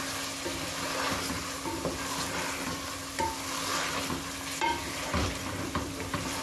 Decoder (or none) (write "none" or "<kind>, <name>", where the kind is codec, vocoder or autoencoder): none